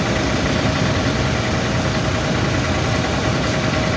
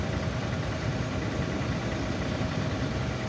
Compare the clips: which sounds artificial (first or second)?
second